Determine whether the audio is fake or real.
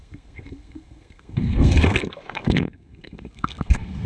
fake